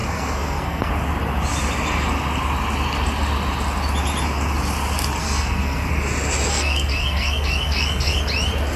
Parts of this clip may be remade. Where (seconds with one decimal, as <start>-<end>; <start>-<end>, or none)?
0.0-0.9; 5.2-5.9; 6.5-8.2